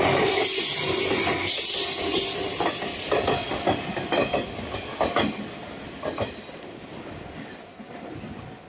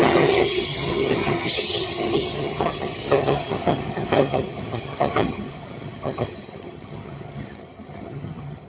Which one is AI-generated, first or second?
second